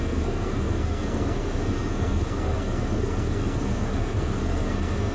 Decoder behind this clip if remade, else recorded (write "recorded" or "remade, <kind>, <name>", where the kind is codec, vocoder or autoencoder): remade, codec, SNAC